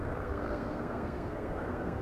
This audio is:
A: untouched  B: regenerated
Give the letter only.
B